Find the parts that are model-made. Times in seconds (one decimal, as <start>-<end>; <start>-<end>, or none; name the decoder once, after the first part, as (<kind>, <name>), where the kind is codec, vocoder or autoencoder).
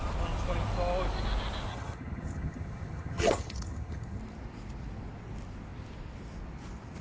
1.7-4.2 (vocoder, HiFi-GAN)